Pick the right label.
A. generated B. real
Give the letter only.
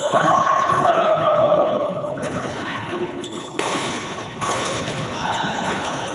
A